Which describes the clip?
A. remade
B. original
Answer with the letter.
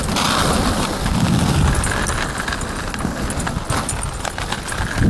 B